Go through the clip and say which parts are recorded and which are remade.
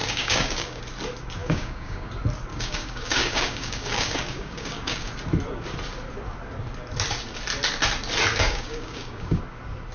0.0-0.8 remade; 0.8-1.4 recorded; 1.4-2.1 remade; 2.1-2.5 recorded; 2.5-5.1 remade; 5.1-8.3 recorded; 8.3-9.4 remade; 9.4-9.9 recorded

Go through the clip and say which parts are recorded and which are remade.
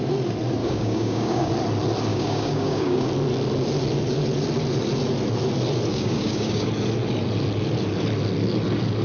0.0-0.6 recorded; 0.6-1.5 remade; 1.5-2.1 recorded; 2.1-3.1 remade; 3.1-5.9 recorded; 5.9-6.7 remade; 6.7-9.0 recorded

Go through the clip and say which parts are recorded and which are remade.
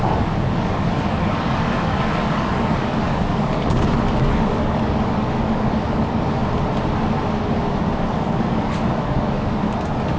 0.0-6.4 remade; 6.4-7.8 recorded; 7.8-10.2 remade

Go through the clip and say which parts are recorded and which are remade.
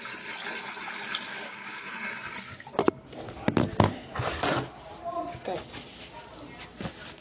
0.0-1.3 recorded; 1.3-1.9 remade; 1.9-7.2 recorded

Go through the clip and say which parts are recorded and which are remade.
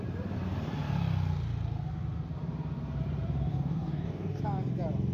0.0-3.5 recorded; 3.5-4.4 remade; 4.4-5.1 recorded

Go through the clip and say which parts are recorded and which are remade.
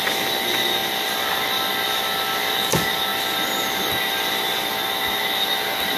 0.0-6.0 recorded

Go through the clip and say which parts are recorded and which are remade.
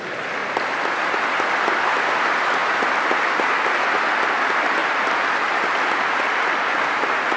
0.0-7.4 recorded